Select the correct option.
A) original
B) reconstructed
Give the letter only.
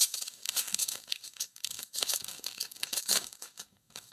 B